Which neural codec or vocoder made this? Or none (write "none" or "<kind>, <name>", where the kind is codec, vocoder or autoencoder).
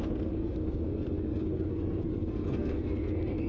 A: codec, SNAC